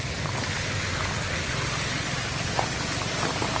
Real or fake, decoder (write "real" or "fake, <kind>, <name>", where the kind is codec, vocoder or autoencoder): real